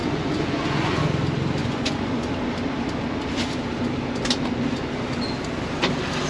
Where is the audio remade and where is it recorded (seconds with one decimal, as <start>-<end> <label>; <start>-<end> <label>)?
0.0-1.0 remade; 1.0-1.6 recorded; 1.6-2.3 remade; 2.3-6.3 recorded